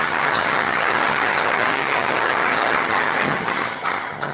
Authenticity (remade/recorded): remade